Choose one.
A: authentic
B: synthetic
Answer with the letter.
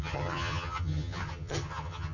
B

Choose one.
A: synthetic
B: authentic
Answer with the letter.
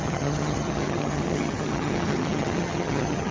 A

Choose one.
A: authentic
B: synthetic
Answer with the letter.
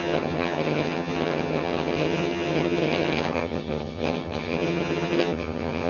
B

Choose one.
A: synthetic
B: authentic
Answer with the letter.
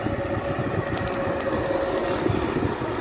B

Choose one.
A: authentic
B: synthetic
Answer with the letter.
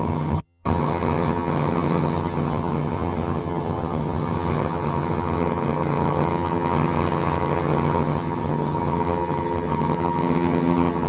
B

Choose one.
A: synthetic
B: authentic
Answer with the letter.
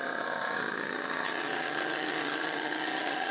A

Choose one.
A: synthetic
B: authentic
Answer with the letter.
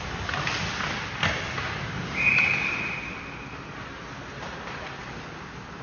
B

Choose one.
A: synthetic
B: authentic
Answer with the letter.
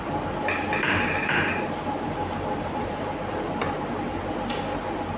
B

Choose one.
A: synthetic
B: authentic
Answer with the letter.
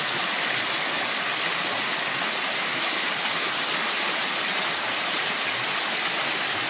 B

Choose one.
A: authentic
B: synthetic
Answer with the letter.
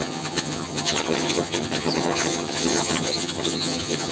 B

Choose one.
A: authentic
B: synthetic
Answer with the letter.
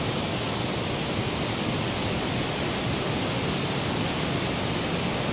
A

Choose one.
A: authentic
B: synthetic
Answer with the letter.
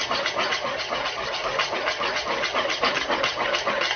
A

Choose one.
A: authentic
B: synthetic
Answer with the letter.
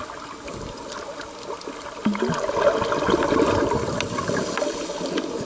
A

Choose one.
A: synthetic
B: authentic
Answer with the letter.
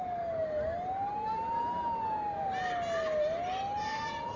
B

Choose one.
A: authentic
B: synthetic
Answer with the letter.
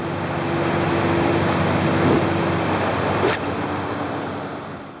A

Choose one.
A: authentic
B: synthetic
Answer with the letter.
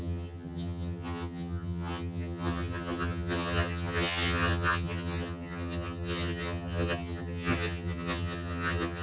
B